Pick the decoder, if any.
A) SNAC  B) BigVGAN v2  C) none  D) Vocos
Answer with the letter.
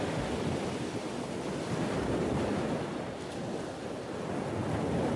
C